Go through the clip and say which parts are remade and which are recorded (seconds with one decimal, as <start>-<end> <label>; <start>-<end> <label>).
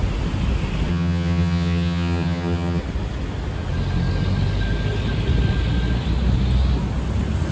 0.0-0.9 recorded; 0.9-2.8 remade; 2.8-7.5 recorded